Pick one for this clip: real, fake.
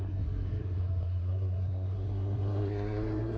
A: fake